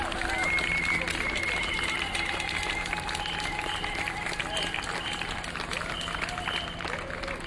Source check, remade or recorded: recorded